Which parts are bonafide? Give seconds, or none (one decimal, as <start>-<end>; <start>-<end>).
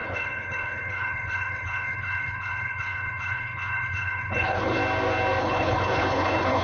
4.8-5.4